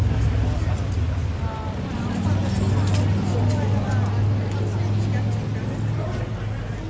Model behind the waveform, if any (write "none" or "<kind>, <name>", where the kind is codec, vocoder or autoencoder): none